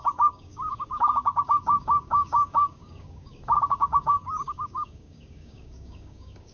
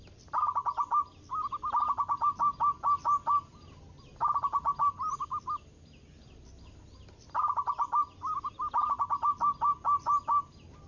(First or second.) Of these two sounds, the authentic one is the second